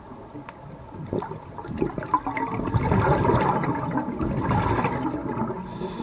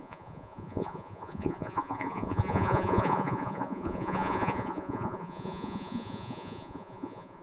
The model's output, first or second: second